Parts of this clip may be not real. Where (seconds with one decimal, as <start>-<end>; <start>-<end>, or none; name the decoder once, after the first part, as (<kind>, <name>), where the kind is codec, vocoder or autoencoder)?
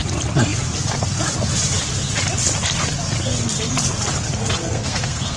4.6-5.4 (codec, SNAC)